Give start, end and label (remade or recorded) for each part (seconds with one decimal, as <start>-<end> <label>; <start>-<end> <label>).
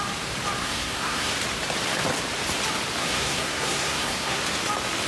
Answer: 0.0-0.6 recorded; 0.6-1.3 remade; 1.3-3.0 recorded; 3.0-4.4 remade; 4.4-5.1 recorded